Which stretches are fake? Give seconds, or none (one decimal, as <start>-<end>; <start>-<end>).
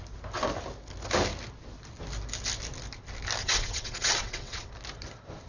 3.4-4.7